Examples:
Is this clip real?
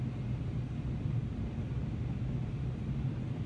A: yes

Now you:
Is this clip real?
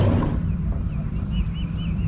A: yes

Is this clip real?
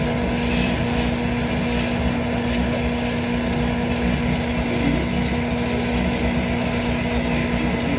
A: yes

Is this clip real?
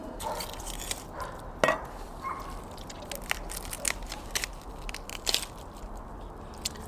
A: yes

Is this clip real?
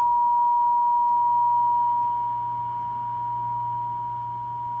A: yes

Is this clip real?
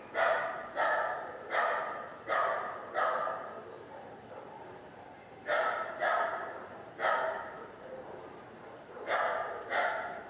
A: no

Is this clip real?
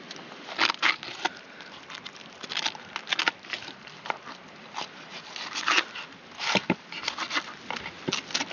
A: yes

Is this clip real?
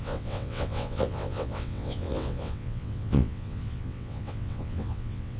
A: no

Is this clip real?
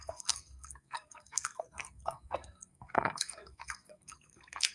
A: no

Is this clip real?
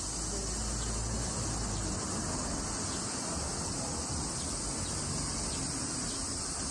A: yes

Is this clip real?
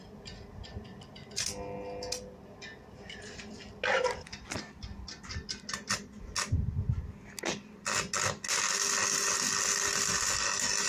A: yes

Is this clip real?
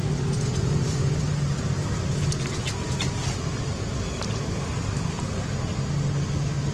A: yes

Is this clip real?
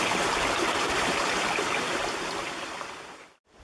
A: yes